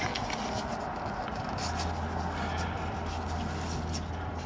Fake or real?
real